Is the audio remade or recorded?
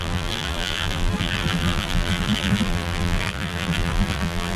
remade